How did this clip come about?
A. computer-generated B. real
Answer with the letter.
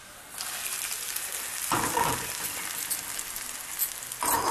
B